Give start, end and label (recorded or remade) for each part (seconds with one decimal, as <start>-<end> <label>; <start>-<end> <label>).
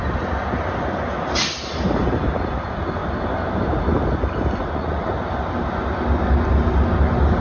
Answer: 0.0-4.6 recorded; 4.6-5.1 remade; 5.1-7.4 recorded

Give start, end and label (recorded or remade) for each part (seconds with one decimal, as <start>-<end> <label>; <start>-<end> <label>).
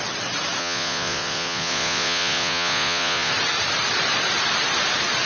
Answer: 0.0-0.6 recorded; 0.6-3.3 remade; 3.3-5.3 recorded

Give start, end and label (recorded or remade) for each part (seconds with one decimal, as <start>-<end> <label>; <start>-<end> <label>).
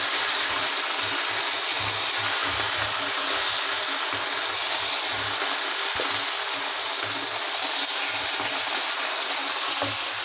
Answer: 0.0-10.2 recorded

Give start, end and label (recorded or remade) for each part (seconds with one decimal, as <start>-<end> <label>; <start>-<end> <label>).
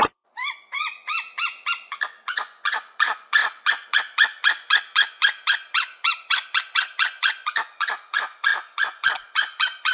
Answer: 0.0-9.9 remade